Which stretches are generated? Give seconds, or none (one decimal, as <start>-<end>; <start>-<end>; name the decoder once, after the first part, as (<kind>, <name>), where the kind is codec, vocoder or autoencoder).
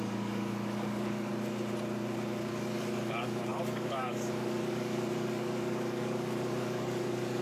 0.0-1.3 (codec, DAC); 2.5-7.4